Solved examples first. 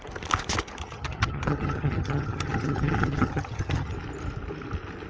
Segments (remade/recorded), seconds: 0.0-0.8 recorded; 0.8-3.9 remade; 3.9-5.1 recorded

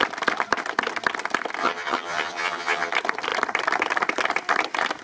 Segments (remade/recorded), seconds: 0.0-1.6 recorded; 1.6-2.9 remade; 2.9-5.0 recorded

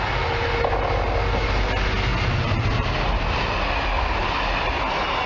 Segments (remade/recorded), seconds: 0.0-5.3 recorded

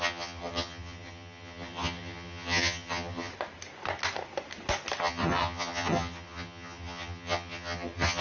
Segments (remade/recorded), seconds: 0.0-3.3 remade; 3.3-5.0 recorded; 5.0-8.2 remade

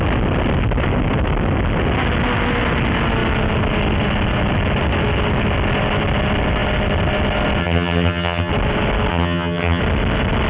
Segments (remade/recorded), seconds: 0.0-7.6 recorded; 7.6-8.5 remade; 8.5-9.1 recorded; 9.1-9.8 remade; 9.8-10.5 recorded